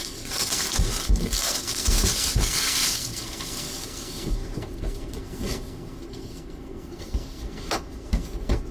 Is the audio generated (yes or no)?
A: yes